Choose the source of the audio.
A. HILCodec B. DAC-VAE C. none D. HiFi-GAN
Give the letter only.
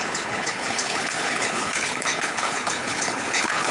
A